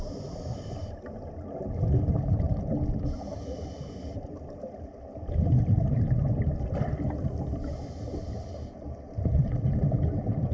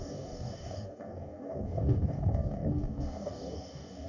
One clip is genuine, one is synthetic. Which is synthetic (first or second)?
second